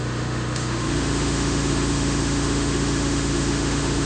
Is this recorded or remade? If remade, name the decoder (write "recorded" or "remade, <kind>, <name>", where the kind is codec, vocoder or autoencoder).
remade, autoencoder, DAC-VAE